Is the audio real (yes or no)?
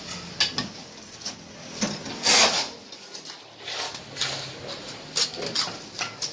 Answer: yes